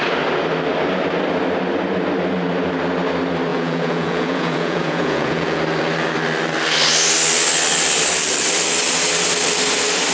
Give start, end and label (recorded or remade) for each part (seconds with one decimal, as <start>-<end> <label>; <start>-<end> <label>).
0.0-3.5 recorded; 3.5-5.6 remade; 5.6-10.1 recorded

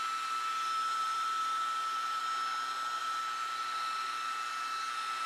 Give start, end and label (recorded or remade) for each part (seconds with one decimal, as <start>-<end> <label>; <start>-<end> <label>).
0.0-0.5 recorded; 0.5-2.2 remade; 2.2-3.0 recorded; 3.0-4.5 remade; 4.5-5.3 recorded